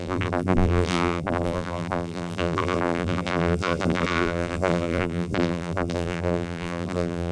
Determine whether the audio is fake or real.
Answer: fake